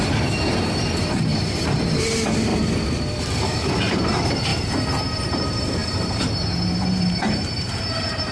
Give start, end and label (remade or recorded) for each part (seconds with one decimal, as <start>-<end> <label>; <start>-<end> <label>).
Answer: 0.0-2.5 remade; 2.5-3.2 recorded; 3.2-4.5 remade; 4.5-5.2 recorded; 5.2-8.3 remade

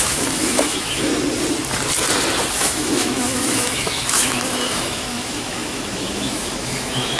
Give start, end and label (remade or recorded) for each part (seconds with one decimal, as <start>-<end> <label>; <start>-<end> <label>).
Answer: 0.0-1.1 remade; 1.1-2.5 recorded; 2.5-7.2 remade